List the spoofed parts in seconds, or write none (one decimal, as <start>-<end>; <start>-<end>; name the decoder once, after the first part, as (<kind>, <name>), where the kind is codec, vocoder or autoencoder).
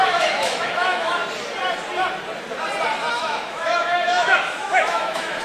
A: 0.0-1.2 (autoencoder, DAC-VAE); 3.1-5.4